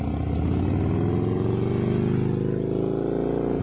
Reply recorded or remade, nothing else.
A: recorded